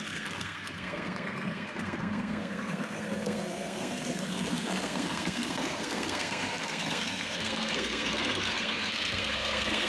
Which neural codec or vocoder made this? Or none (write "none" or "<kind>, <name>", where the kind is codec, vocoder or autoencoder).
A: codec, SNAC